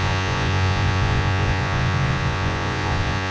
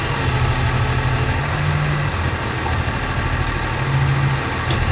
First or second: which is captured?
second